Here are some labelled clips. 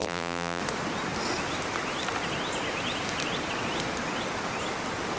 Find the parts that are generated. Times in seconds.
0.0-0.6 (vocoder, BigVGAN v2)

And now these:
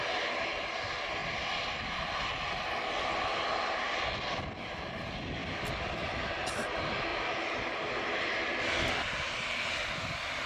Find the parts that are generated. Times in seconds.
7.1-8.9 (vocoder, BigVGAN v2)

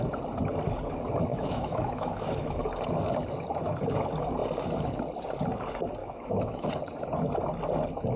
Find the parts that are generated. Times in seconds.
1.3-2.6 (autoencoder, DAC-VAE); 6.0-6.7

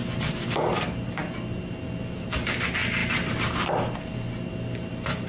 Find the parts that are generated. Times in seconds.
none

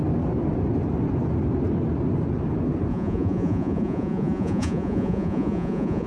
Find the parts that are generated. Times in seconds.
2.9-6.1 (vocoder, Vocos)

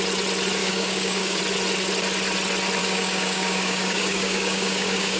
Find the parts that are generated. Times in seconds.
0.6-1.4 (codec, DAC); 2.8-5.2

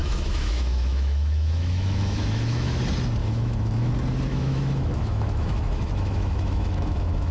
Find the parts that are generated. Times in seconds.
0.0-2.8 (autoencoder, DAC-VAE); 3.2-3.9; 4.3-7.3

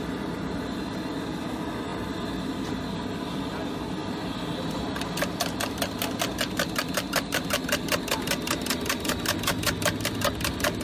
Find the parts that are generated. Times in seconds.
none